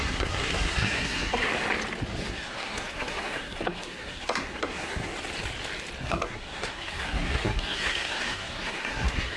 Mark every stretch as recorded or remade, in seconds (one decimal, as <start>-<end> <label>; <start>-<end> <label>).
0.0-1.5 remade; 1.5-2.2 recorded; 2.2-5.1 remade; 5.1-6.0 recorded; 6.0-9.4 remade